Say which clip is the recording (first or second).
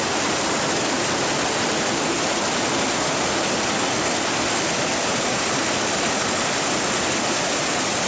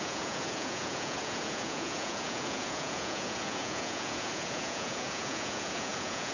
first